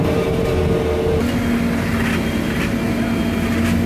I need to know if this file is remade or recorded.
recorded